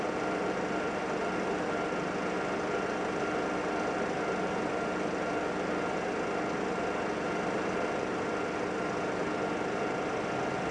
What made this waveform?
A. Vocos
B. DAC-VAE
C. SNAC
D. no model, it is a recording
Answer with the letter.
D